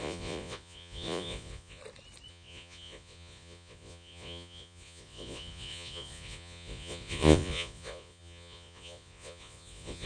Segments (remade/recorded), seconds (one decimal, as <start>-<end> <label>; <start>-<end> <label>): 0.0-1.8 remade; 1.8-2.3 recorded; 2.3-10.1 remade